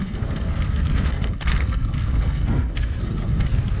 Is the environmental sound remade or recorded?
remade